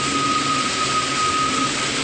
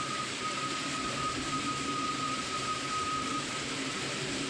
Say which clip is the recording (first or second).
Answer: first